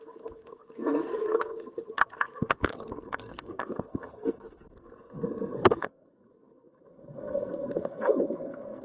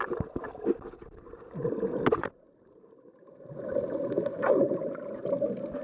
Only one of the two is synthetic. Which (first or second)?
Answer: first